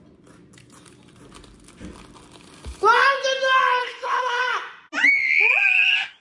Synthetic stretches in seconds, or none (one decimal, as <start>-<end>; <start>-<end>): 3.8-4.4